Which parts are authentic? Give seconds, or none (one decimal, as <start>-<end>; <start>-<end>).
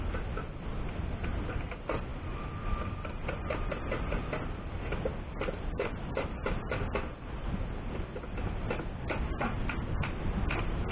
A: 0.0-10.9